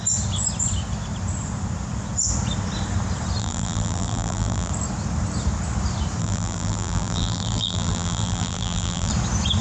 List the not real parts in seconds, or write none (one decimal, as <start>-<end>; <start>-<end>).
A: 3.4-4.7; 6.2-9.1